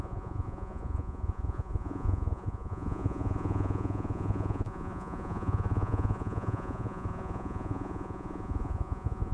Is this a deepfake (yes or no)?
yes